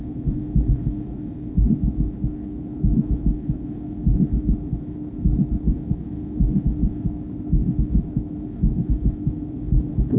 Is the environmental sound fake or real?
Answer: fake